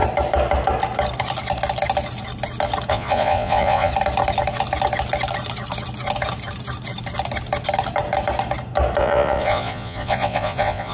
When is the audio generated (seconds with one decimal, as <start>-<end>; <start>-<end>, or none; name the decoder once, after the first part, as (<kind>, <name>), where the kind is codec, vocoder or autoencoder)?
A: 2.9-3.9 (vocoder, Vocos); 9.0-10.9